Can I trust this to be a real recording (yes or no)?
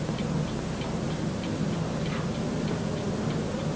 yes